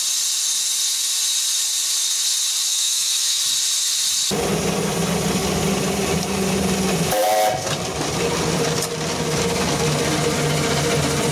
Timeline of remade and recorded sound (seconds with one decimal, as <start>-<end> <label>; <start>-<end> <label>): 0.0-2.7 recorded; 2.7-3.4 remade; 3.4-11.3 recorded